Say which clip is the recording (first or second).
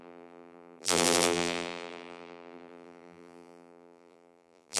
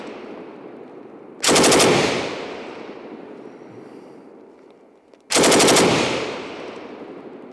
second